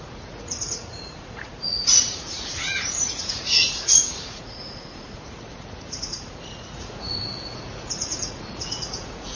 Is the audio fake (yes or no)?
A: yes